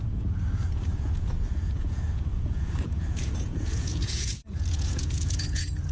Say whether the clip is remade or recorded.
remade